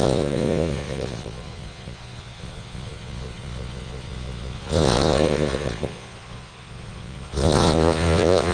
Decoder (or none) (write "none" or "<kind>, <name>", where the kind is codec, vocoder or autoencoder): vocoder, Vocos